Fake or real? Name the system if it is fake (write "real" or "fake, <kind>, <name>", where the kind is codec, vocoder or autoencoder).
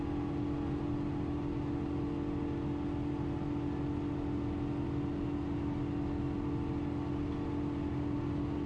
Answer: real